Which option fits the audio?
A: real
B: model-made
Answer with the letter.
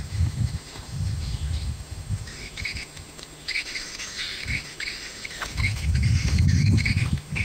B